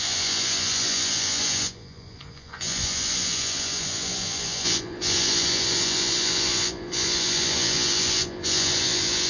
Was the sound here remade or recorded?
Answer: remade